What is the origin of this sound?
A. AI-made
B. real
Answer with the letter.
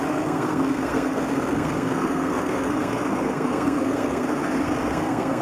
A